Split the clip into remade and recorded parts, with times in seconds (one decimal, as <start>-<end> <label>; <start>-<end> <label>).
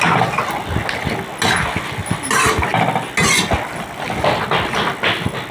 0.0-5.5 recorded